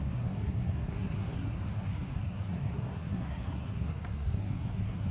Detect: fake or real fake